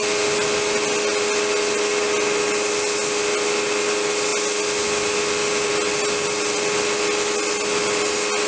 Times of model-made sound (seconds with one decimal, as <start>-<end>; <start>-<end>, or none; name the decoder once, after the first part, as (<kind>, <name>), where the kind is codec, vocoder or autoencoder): none